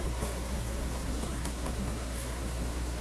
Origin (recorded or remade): remade